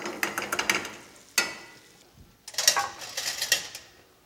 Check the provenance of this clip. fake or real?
real